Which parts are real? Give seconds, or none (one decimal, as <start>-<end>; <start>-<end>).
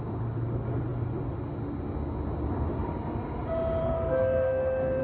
0.0-3.8